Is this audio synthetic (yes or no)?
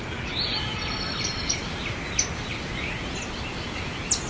no